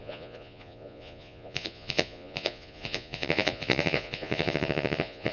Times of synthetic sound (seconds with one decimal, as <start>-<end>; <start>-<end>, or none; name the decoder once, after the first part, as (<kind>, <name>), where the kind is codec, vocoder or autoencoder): 0.0-5.3 (vocoder, Vocos)